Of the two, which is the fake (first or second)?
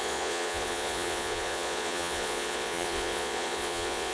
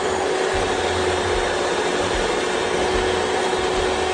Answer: first